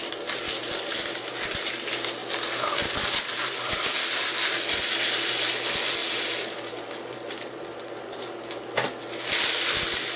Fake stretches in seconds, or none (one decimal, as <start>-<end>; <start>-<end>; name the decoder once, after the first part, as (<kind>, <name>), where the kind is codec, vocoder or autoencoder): 2.2-4.3 (vocoder, BigVGAN v2); 6.0-7.5